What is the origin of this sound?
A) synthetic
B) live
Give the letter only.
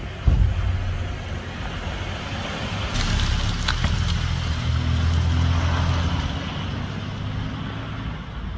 B